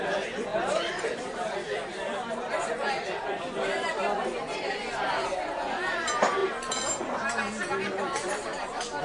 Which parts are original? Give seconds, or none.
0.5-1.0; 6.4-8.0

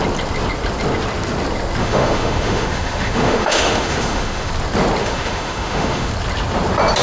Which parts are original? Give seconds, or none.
0.0-1.8; 4.5-5.0; 6.1-7.0

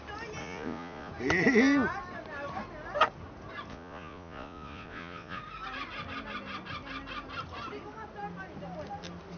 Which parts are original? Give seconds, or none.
0.0-0.4; 1.1-3.7; 5.4-9.4

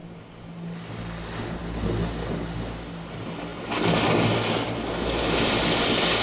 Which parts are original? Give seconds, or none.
0.0-6.2

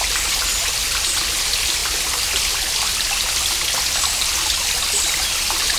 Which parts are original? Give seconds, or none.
0.0-5.8

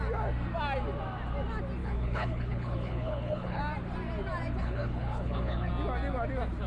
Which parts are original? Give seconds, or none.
0.0-1.8; 3.6-4.6; 5.7-6.7